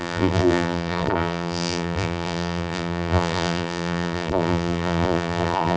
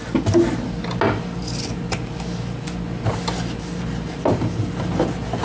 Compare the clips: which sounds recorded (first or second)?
second